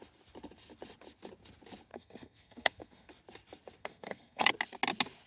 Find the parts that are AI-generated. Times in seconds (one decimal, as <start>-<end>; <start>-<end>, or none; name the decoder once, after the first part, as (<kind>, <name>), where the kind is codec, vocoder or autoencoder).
1.9-3.1 (codec, SNAC); 3.8-4.5